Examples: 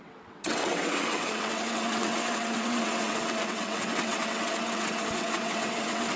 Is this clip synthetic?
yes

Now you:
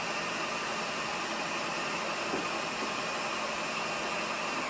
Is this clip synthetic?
no